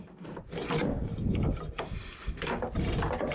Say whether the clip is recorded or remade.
recorded